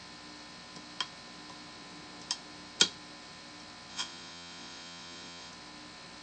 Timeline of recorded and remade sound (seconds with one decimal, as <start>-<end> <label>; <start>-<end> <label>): 0.0-3.9 recorded; 3.9-5.5 remade; 5.5-6.2 recorded